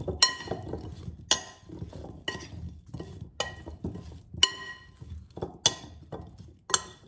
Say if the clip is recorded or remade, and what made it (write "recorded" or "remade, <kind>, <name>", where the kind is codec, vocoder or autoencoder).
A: recorded